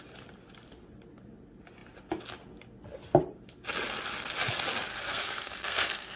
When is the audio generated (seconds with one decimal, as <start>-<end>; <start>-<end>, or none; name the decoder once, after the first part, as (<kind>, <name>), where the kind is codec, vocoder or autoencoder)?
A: 4.9-6.2 (codec, SNAC)